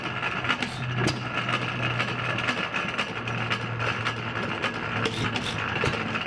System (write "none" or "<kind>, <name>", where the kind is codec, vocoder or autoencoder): none